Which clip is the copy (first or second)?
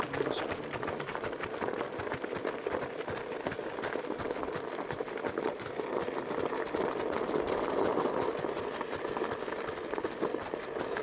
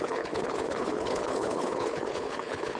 second